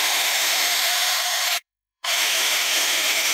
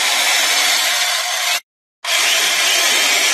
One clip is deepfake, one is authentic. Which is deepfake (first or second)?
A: first